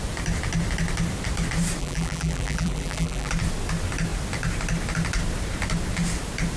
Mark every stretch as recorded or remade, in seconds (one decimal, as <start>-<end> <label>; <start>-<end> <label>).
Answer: 0.0-1.8 recorded; 1.8-3.3 remade; 3.3-6.6 recorded